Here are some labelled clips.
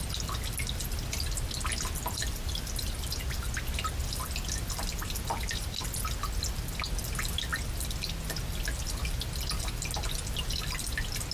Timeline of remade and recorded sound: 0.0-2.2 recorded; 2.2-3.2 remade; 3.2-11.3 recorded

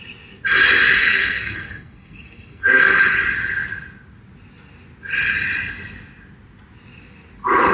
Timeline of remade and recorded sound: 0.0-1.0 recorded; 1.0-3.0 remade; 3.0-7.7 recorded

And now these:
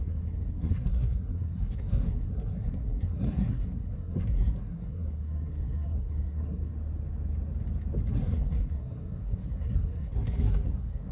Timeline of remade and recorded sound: 0.0-6.7 remade; 6.7-8.1 recorded; 8.1-11.1 remade